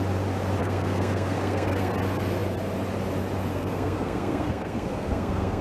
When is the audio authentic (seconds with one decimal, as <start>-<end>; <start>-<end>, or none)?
0.0-0.6; 1.9-3.5